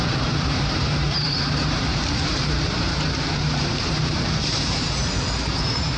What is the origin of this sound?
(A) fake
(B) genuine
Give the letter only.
A